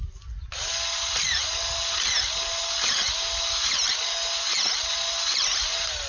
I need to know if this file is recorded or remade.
recorded